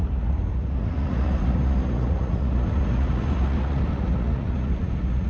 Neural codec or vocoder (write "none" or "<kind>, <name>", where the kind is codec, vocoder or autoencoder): vocoder, Vocos